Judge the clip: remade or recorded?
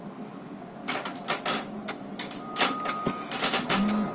recorded